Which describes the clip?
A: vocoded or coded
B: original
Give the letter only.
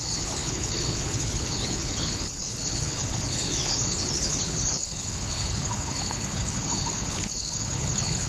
A